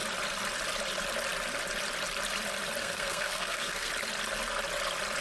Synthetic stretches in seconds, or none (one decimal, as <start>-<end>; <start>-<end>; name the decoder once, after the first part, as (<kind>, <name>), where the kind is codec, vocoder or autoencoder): 2.8-3.9 (codec, SNAC)